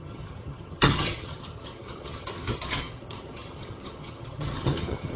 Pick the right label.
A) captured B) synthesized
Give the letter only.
B